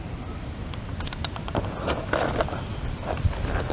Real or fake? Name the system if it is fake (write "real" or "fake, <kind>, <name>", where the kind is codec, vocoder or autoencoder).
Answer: real